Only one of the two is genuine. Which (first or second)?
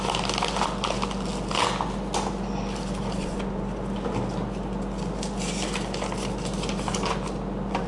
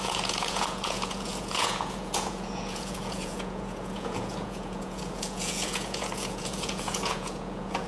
first